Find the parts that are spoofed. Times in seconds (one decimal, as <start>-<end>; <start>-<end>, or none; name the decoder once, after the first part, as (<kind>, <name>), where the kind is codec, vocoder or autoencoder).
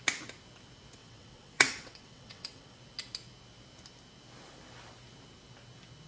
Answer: 1.0-2.8 (vocoder, WaveNeXt)